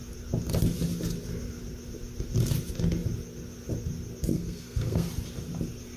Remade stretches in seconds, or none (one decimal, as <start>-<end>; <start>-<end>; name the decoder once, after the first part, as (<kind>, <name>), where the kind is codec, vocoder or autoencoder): 4.3-5.1 (codec, SNAC)